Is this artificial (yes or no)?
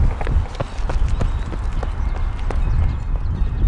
no